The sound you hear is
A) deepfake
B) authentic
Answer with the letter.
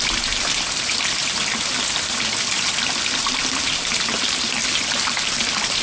B